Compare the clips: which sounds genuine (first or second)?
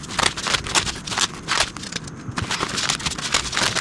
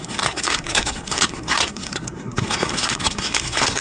first